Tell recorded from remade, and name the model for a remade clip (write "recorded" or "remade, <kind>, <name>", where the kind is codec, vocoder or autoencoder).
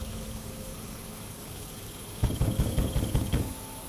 remade, codec, DAC